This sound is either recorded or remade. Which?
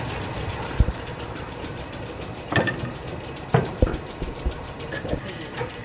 remade